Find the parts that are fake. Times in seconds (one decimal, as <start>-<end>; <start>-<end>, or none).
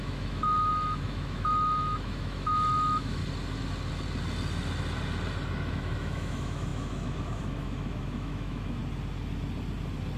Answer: 0.0-3.2; 5.7-8.8